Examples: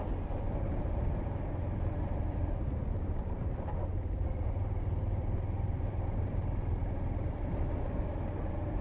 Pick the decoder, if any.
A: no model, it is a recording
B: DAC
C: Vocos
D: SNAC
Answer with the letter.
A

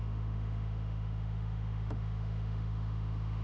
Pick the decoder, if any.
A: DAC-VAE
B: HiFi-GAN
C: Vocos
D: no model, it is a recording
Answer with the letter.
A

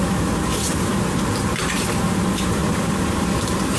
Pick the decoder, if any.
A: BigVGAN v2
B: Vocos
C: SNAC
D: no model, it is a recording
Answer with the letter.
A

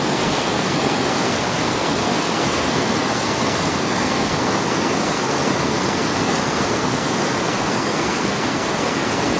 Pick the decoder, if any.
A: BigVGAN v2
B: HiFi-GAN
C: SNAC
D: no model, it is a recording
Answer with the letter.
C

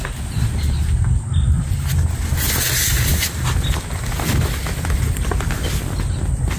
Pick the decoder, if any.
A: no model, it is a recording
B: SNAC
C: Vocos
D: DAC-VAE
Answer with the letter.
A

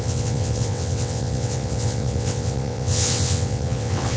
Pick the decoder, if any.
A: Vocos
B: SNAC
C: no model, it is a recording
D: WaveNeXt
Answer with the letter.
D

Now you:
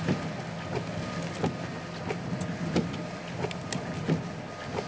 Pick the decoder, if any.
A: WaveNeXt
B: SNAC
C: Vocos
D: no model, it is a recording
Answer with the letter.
D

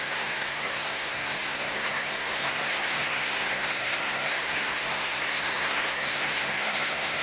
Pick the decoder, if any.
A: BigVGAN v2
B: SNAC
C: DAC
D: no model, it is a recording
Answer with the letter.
B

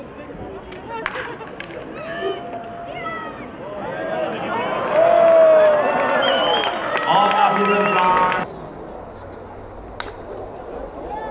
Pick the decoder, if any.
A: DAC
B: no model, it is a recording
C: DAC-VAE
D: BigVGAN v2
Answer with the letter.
B